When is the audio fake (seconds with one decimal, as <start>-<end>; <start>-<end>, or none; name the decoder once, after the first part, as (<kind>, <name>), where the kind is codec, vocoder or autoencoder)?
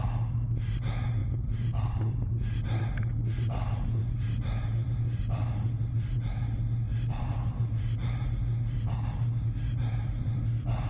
1.2-2.8 (vocoder, BigVGAN v2)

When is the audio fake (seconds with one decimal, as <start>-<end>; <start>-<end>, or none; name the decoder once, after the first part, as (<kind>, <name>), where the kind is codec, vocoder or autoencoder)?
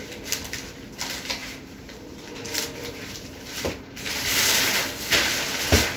1.4-4.8 (vocoder, BigVGAN v2)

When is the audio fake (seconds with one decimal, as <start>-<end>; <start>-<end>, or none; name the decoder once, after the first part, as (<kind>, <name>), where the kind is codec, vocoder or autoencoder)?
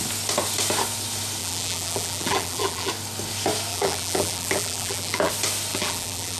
1.4-2.9 (vocoder, BigVGAN v2); 3.7-5.3; 5.7-6.4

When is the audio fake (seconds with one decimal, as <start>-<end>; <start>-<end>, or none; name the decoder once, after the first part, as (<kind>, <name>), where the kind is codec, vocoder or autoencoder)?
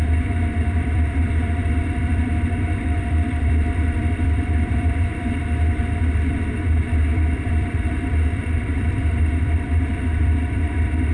0.0-5.4 (vocoder, BigVGAN v2); 6.9-11.1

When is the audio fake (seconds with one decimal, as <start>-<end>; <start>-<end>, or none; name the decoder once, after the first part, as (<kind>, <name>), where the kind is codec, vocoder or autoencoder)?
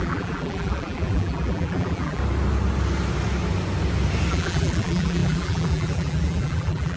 0.0-2.2 (vocoder, BigVGAN v2); 4.3-7.0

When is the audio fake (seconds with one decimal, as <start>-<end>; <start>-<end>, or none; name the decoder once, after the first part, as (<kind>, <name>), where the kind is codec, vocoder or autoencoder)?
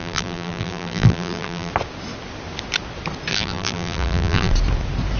0.0-1.7 (vocoder, BigVGAN v2); 3.3-4.5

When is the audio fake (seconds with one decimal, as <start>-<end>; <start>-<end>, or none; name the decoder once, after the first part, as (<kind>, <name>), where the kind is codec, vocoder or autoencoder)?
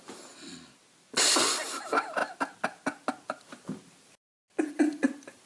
none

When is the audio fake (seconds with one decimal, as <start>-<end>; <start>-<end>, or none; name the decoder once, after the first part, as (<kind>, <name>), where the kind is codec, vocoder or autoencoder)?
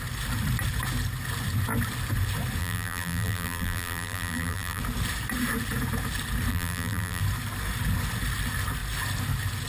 2.6-4.8 (vocoder, BigVGAN v2); 6.5-7.2